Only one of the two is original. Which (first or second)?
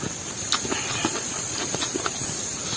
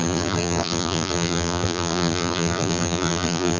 first